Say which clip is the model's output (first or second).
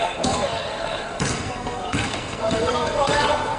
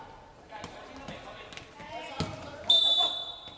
first